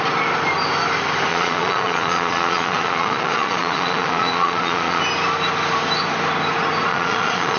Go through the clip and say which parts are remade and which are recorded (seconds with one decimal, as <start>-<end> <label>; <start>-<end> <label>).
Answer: 0.0-1.3 recorded; 1.3-5.0 remade; 5.0-6.9 recorded; 6.9-7.6 remade

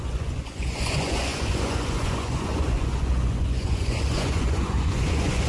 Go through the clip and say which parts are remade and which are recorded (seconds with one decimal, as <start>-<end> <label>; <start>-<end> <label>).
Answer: 0.0-5.5 remade

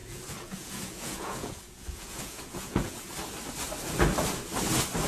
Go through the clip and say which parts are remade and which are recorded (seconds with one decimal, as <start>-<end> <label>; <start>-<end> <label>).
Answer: 0.0-3.1 remade; 3.1-5.1 recorded

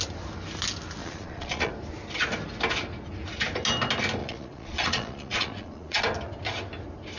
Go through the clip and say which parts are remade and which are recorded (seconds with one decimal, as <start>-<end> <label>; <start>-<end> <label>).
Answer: 0.0-1.0 recorded; 1.0-1.7 remade; 1.7-4.2 recorded; 4.2-6.0 remade; 6.0-7.2 recorded

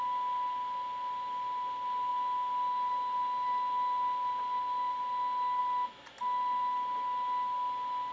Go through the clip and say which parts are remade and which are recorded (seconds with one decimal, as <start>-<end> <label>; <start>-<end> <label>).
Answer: 0.0-8.1 recorded

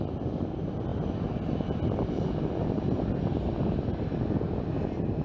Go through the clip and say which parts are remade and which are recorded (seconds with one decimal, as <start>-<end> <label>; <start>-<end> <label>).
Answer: 0.0-5.2 recorded